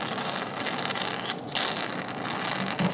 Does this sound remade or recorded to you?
recorded